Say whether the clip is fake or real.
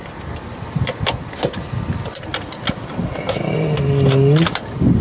real